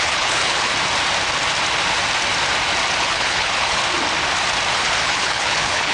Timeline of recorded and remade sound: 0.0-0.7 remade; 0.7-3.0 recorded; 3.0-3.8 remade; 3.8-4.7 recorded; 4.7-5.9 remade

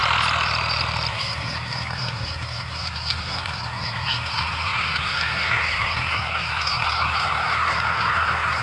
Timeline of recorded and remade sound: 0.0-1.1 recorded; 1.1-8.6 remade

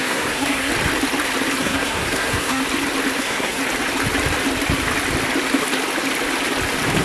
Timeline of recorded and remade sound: 0.0-0.7 remade; 0.7-1.6 recorded; 1.6-2.6 remade; 2.6-3.2 recorded; 3.2-3.6 remade; 3.6-7.0 recorded